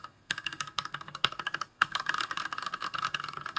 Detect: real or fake fake